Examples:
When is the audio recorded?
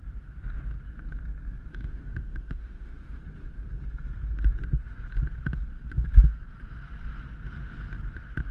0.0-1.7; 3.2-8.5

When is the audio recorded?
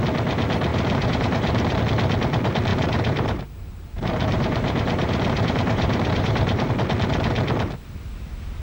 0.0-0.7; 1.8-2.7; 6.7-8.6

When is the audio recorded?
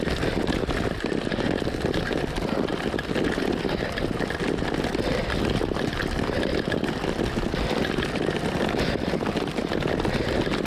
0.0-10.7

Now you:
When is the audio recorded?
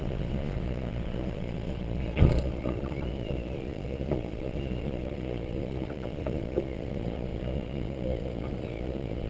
none